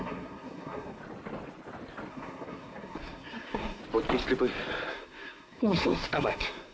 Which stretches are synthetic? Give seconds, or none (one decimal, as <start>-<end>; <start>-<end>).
0.0-1.0; 2.1-3.8; 4.9-6.7

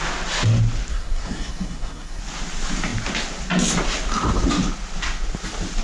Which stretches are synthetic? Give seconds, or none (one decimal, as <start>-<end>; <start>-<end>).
0.9-2.2

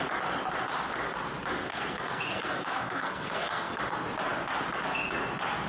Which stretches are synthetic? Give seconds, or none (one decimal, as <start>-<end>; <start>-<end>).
1.7-3.8

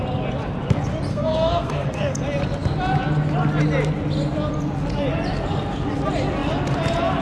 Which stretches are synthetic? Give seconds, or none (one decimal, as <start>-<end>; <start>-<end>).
1.1-2.2